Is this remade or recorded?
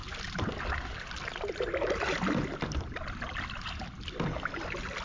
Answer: recorded